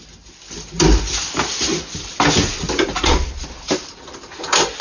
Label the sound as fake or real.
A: real